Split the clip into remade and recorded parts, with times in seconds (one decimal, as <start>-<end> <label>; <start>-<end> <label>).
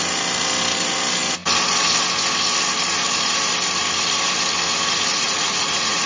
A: 0.0-5.1 recorded; 5.1-6.1 remade